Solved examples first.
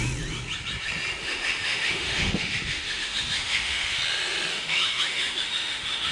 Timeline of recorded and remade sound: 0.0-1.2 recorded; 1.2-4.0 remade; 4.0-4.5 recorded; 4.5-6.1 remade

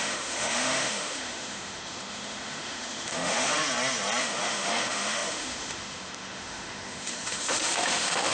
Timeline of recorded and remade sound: 0.0-3.6 remade; 3.6-4.2 recorded; 4.2-8.3 remade

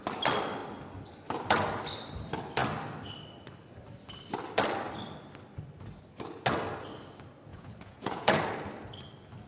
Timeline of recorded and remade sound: 0.0-7.5 recorded; 7.5-8.4 remade; 8.4-9.5 recorded

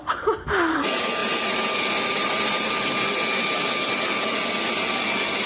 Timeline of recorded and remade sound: 0.0-5.5 recorded

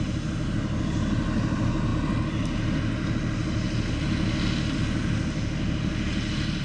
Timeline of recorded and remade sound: 0.0-6.6 recorded

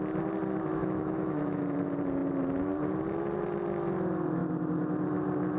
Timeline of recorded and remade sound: 0.0-0.8 recorded; 0.8-1.6 remade; 1.6-5.6 recorded

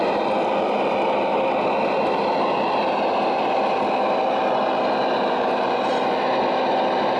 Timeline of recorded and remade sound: 0.0-7.2 recorded

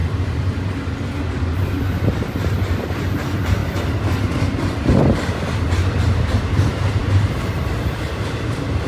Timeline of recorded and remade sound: 0.0-2.5 recorded; 2.5-3.6 remade; 3.6-6.4 recorded; 6.4-8.9 remade